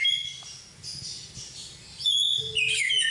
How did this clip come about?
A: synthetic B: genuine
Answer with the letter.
B